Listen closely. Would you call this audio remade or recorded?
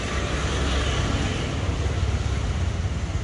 recorded